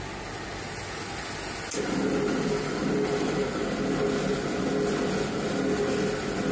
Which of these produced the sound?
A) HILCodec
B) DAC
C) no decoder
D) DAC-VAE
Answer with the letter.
C